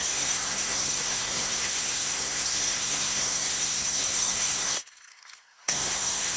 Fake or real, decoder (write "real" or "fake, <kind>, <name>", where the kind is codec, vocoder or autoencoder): fake, codec, SNAC